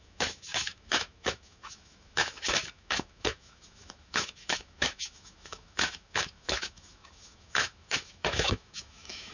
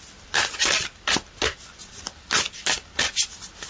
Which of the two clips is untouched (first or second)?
second